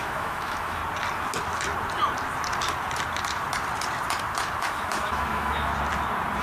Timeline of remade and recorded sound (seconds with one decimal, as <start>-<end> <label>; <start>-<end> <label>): 0.0-0.8 remade; 0.8-4.6 recorded; 4.6-5.7 remade; 5.7-6.4 recorded